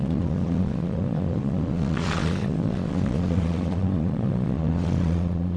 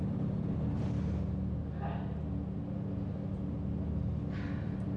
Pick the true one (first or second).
second